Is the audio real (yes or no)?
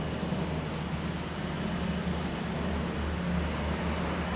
yes